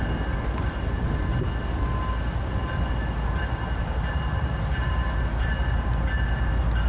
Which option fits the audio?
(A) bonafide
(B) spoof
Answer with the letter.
A